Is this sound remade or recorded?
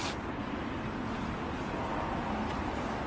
recorded